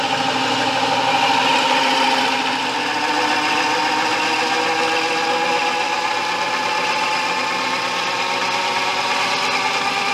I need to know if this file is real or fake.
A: real